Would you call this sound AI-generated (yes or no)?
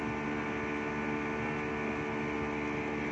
no